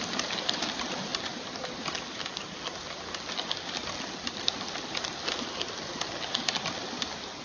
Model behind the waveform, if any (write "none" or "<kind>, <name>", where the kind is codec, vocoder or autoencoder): none